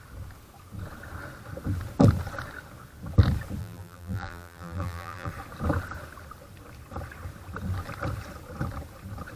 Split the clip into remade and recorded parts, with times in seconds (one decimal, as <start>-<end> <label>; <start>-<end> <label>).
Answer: 0.0-3.6 recorded; 3.6-5.3 remade; 5.3-9.4 recorded